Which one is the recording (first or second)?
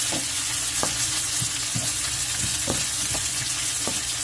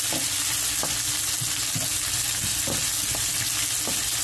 second